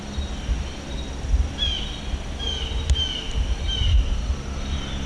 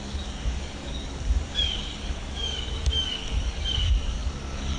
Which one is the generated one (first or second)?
second